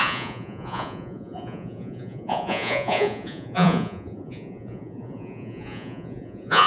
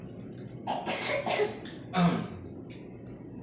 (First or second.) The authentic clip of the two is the second